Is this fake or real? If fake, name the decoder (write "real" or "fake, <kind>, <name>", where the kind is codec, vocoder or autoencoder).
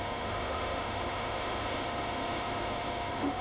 fake, autoencoder, DAC-VAE